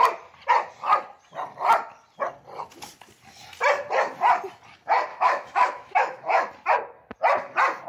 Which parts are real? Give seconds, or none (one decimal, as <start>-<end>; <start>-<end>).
0.0-5.1; 6.5-7.9